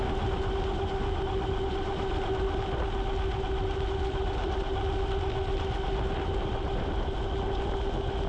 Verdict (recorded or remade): recorded